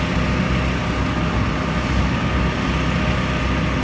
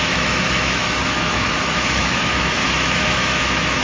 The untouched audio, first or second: first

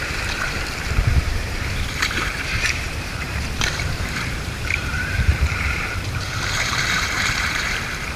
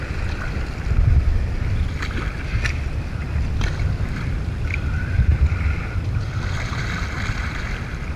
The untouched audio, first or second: second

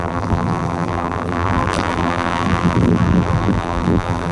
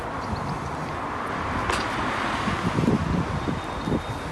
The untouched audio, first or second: second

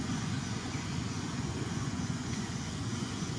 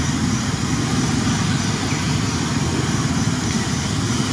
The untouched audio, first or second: second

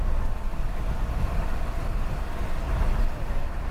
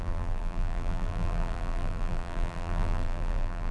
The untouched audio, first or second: first